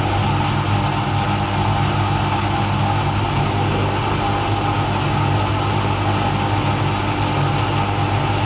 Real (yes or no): yes